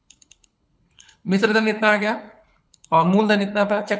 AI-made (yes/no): yes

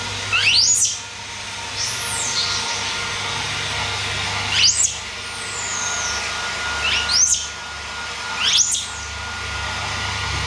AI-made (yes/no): no